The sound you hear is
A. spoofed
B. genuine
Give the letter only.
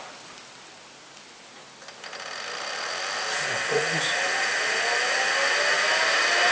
B